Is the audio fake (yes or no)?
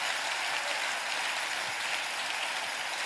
no